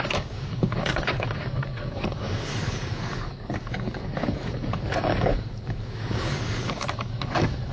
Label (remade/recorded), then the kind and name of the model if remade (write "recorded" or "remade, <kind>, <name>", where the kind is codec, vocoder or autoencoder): remade, codec, DAC